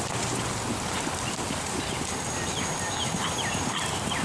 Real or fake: real